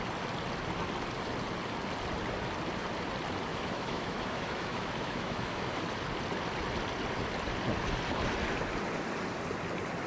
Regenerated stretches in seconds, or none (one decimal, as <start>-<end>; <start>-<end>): 3.5-5.8